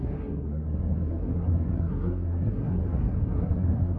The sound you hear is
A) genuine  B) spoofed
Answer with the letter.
B